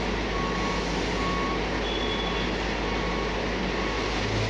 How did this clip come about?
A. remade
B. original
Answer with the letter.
B